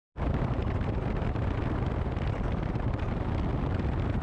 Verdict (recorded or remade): recorded